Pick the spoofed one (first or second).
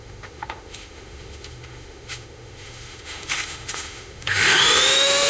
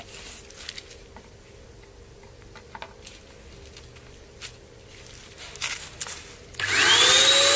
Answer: first